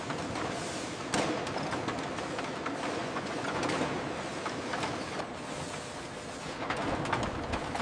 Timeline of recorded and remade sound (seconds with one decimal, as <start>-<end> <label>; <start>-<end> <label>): 0.0-3.0 recorded; 3.0-3.6 remade; 3.6-7.8 recorded